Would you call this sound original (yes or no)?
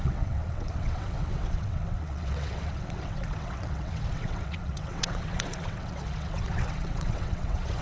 no